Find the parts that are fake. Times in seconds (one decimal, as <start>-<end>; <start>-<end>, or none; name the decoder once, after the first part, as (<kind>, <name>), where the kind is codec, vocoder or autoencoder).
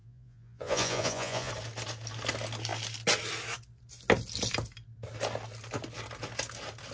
0.0-1.5 (vocoder, Vocos)